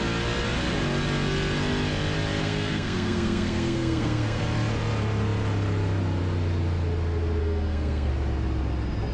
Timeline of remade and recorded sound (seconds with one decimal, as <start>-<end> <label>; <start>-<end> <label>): 0.0-2.4 recorded; 2.4-4.4 remade; 4.4-7.4 recorded; 7.4-8.1 remade; 8.1-9.1 recorded